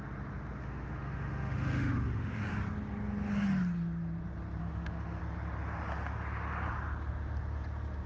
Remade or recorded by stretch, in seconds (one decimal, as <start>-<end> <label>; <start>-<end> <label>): 0.0-0.6 recorded; 0.6-2.4 remade; 2.4-4.6 recorded; 4.6-5.2 remade; 5.2-8.1 recorded